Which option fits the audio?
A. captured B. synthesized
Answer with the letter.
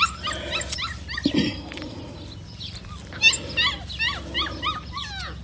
A